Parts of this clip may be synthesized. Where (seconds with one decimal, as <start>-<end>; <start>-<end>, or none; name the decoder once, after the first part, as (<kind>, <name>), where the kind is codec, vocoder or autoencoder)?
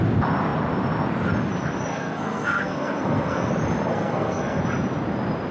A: 1.9-3.5 (codec, SNAC); 3.9-4.6